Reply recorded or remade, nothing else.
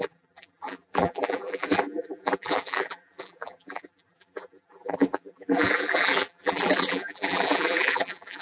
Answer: remade